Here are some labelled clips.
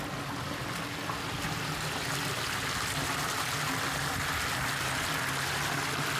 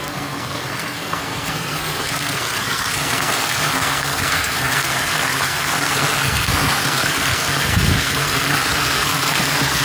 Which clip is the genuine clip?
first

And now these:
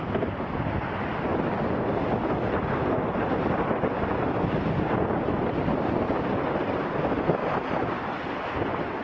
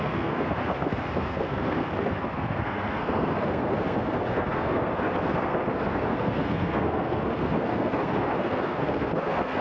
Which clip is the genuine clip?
first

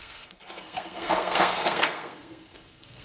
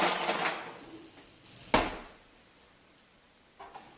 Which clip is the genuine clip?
second